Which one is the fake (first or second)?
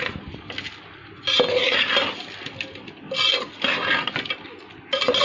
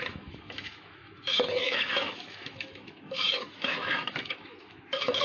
second